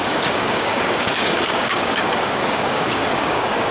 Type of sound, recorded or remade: remade